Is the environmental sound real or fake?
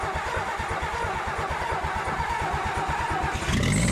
real